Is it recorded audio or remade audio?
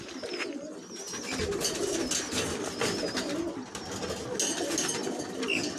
recorded